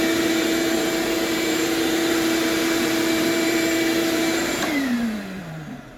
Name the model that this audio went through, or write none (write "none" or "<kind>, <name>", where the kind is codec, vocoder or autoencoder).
vocoder, BigVGAN v2